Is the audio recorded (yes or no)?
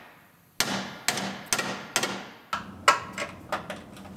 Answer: yes